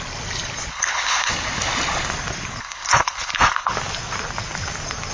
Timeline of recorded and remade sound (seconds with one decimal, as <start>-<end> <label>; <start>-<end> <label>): 0.0-0.7 recorded; 0.7-1.3 remade; 1.3-2.6 recorded; 2.6-3.7 remade; 3.7-5.1 recorded